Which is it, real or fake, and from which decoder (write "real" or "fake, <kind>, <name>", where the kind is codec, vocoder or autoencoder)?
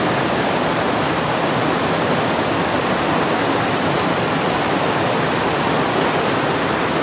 real